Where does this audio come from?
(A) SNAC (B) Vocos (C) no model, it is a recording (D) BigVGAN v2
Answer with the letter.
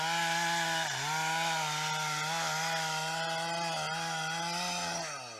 C